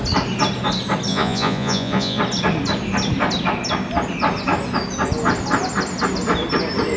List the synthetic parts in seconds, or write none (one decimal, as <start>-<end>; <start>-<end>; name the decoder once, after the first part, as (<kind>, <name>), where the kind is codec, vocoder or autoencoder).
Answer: 1.1-2.2 (vocoder, Vocos)